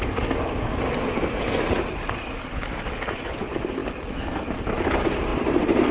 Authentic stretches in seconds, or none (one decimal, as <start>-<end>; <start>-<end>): 0.0-5.9